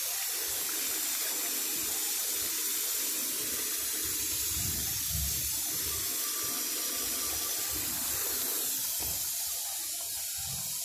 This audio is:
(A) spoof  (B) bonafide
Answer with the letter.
B